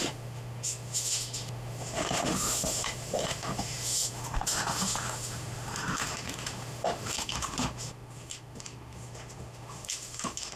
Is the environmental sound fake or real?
fake